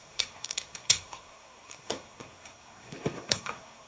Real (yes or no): no